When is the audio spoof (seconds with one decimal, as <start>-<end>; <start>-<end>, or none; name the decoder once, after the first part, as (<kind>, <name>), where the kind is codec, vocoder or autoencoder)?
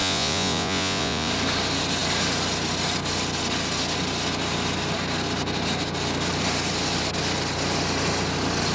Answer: 0.0-1.3 (vocoder, Vocos)